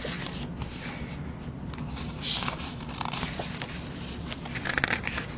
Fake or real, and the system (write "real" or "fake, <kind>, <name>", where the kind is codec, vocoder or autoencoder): real